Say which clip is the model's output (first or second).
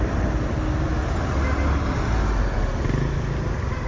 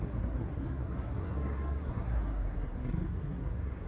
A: second